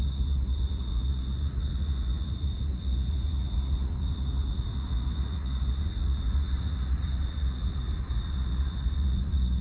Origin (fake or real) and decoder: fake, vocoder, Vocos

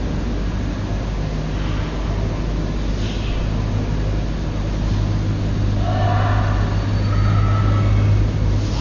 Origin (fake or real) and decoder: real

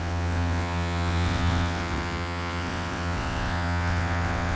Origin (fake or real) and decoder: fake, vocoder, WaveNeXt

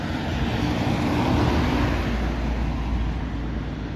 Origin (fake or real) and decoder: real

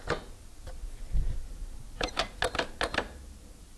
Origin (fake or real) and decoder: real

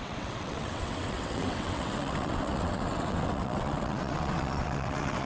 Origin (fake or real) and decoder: fake, vocoder, WaveNeXt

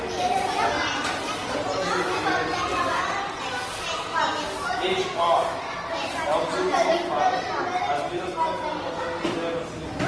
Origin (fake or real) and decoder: real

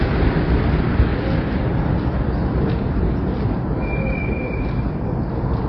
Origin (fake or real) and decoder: real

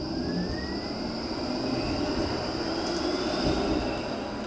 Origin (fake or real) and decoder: real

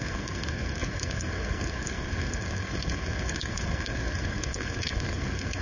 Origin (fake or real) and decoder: fake, codec, SNAC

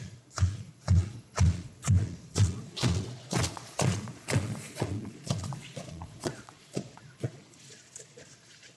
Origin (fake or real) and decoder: fake, vocoder, Vocos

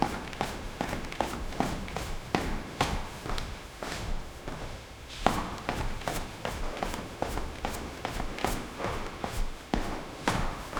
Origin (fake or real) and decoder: fake, autoencoder, DAC-VAE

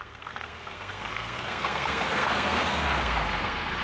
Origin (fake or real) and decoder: fake, codec, SNAC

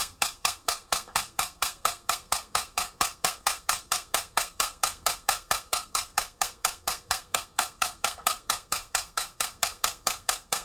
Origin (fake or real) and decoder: fake, codec, SNAC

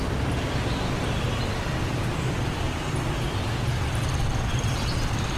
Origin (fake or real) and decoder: real